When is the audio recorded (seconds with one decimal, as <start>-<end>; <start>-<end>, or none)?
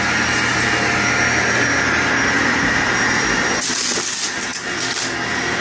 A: 0.0-5.6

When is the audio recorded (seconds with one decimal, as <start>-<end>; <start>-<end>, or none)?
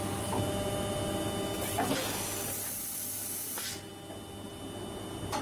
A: 0.0-5.4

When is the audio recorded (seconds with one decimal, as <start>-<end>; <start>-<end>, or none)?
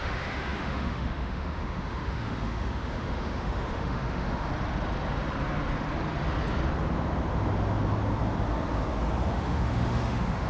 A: 4.5-9.3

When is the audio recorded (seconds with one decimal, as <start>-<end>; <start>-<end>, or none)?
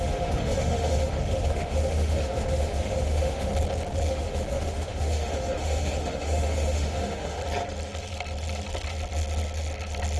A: 3.5-4.1; 7.4-10.2